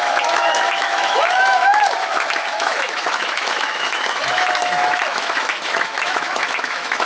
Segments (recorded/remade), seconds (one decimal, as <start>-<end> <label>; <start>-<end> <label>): 0.0-7.1 remade